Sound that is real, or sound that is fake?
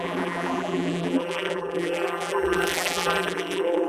fake